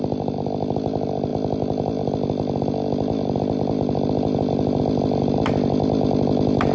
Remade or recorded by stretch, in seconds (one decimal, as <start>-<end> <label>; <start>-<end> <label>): 0.0-6.7 recorded